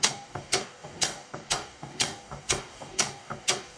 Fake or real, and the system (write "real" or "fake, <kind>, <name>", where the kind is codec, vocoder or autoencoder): fake, codec, DAC